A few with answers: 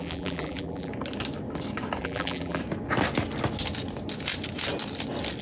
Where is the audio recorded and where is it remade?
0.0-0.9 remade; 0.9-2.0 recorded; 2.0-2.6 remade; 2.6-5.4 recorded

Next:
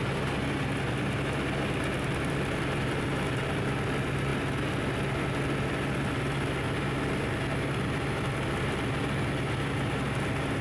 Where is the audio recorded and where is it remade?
0.0-10.6 recorded

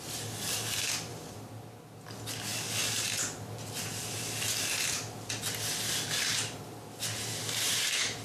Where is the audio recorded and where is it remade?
0.0-1.1 recorded; 1.1-1.7 remade; 1.7-8.2 recorded

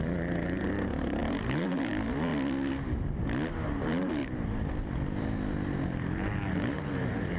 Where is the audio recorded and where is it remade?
0.0-2.3 remade; 2.3-3.5 recorded; 3.5-4.2 remade; 4.2-6.5 recorded; 6.5-7.4 remade

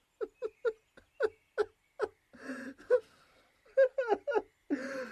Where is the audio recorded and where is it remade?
0.0-5.1 recorded

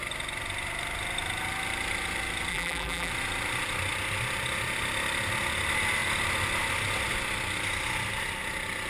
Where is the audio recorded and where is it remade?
0.0-2.5 recorded; 2.5-3.1 remade; 3.1-8.9 recorded